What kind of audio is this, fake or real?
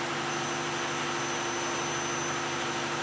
real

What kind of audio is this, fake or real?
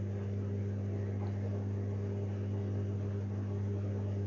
real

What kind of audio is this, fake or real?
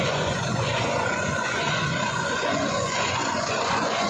fake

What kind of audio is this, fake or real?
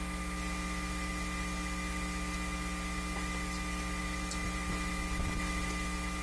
real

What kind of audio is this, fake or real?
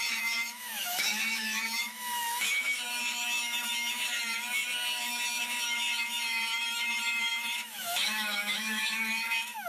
fake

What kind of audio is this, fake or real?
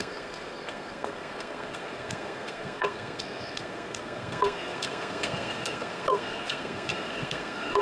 fake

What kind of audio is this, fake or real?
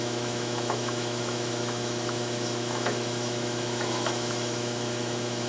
fake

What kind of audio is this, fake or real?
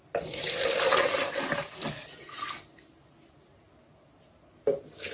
real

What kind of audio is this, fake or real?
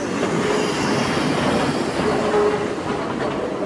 real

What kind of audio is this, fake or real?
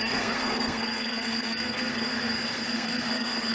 fake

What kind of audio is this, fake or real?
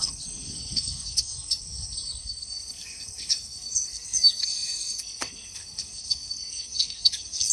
fake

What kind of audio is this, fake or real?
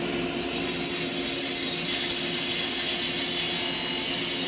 real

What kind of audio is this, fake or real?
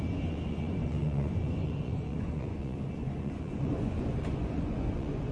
fake